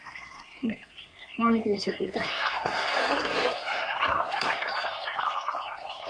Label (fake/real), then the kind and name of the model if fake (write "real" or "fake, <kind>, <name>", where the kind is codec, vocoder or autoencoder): fake, codec, SNAC